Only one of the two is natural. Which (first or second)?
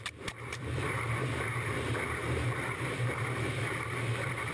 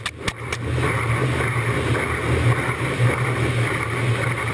second